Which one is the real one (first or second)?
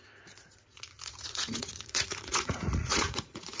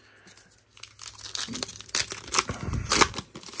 second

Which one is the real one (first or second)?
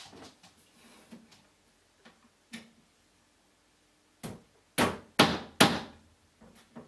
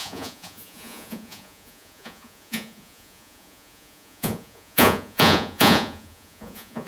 first